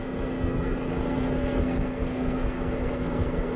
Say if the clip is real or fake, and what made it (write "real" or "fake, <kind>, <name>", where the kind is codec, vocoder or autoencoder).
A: fake, codec, SNAC